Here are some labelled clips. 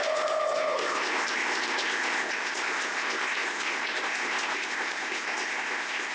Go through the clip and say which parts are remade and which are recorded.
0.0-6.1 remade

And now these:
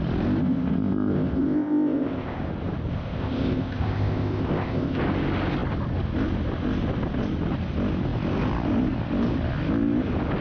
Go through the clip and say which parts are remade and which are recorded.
0.0-0.4 recorded; 0.4-2.4 remade; 2.4-2.9 recorded; 2.9-5.0 remade; 5.0-10.4 recorded

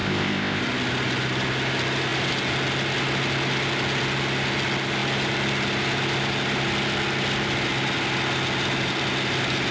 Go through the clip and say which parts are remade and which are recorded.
0.0-0.6 remade; 0.6-9.7 recorded

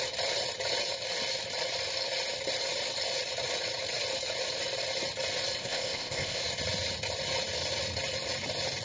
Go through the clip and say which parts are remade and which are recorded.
0.0-5.6 recorded; 5.6-6.4 remade; 6.4-8.8 recorded

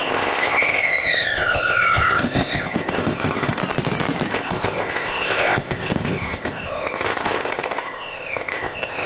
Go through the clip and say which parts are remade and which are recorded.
0.0-3.6 remade; 3.6-4.3 recorded; 4.3-9.1 remade

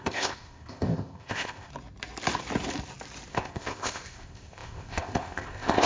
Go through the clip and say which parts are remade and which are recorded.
0.0-1.7 remade; 1.7-3.3 recorded; 3.3-5.9 remade

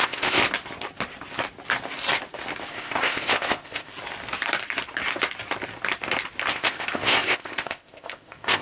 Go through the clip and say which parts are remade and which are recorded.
0.0-0.4 remade; 0.4-2.7 recorded; 2.7-3.9 remade; 3.9-6.5 recorded; 6.5-8.6 remade